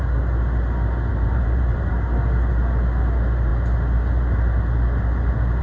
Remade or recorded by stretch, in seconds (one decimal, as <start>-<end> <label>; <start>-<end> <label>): 0.0-1.1 recorded; 1.1-1.9 remade; 1.9-5.6 recorded